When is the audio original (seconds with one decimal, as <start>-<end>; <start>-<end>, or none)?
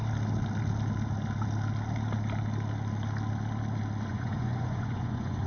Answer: 0.0-4.1